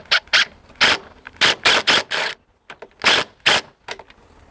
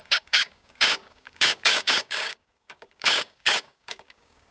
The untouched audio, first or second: first